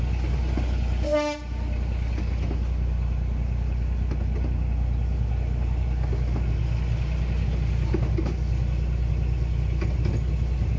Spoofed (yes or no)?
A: no